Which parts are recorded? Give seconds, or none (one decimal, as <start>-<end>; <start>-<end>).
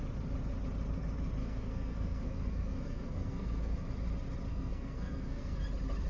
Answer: 0.0-1.4; 3.9-4.5; 5.6-6.1